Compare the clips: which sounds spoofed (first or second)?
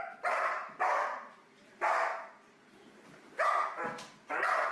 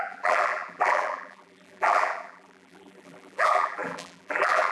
second